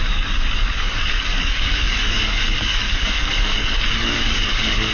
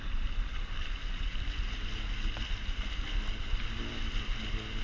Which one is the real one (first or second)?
second